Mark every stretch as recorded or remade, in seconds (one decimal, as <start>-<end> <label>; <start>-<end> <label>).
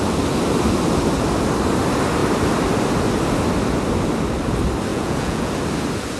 0.0-4.9 recorded; 4.9-5.5 remade; 5.5-6.2 recorded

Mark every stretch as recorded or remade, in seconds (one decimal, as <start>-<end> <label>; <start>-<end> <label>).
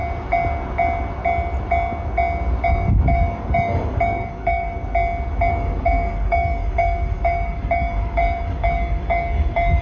0.0-2.7 recorded; 2.7-4.8 remade; 4.8-5.5 recorded; 5.5-9.8 remade